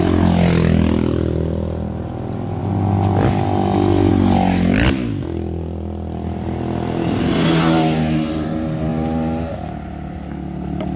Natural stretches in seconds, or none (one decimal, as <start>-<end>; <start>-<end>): 0.0-11.0